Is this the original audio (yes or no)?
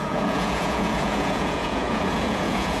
no